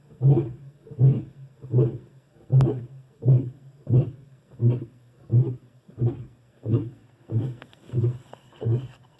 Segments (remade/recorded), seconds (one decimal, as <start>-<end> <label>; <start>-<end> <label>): 0.0-9.2 remade